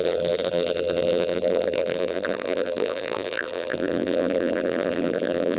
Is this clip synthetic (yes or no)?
yes